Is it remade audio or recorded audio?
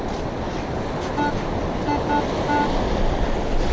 recorded